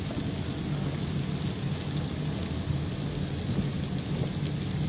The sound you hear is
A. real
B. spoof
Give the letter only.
A